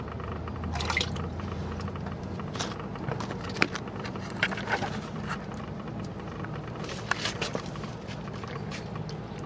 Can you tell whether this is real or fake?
fake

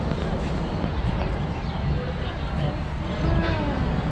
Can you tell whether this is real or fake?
real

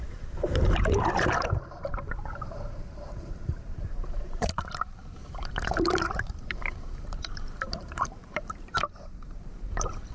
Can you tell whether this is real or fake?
fake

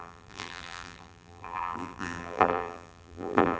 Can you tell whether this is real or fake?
fake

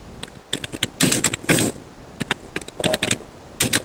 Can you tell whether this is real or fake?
real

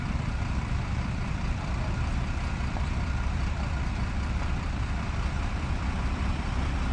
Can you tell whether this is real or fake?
fake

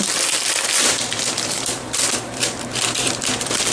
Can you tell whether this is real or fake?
fake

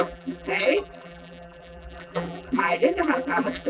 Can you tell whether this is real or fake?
fake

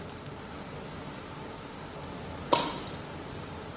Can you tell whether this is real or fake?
fake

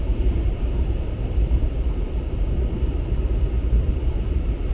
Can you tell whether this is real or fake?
fake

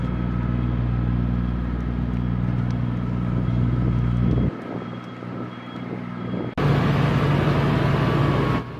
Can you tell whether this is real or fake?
real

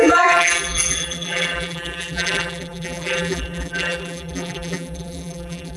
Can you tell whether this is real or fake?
fake